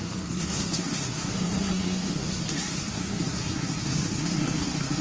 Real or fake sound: fake